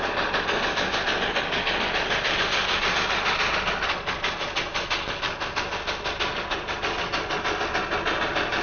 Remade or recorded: recorded